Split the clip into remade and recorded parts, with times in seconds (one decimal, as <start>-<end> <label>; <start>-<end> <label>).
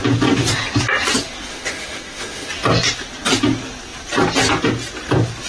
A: 0.0-1.5 recorded; 1.5-2.5 remade; 2.5-5.5 recorded